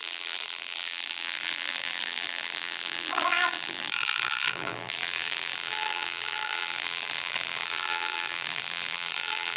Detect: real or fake fake